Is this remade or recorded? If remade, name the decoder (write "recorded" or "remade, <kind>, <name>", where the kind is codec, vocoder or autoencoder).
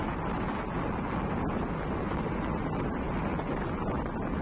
recorded